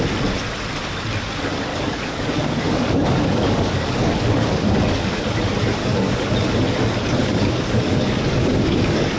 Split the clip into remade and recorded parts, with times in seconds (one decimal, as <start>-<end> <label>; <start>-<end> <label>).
0.0-1.7 recorded; 1.7-5.2 remade; 5.2-5.8 recorded; 5.8-6.3 remade; 6.3-7.2 recorded; 7.2-9.2 remade